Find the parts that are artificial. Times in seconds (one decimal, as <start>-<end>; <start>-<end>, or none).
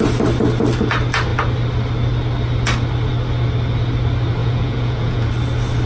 4.4-5.3